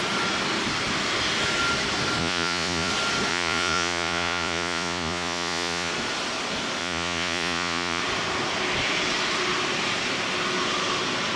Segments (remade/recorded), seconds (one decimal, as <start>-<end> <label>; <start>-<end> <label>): 0.0-2.2 recorded; 2.2-2.9 remade; 2.9-3.3 recorded; 3.3-5.9 remade; 5.9-6.8 recorded; 6.8-8.0 remade; 8.0-11.4 recorded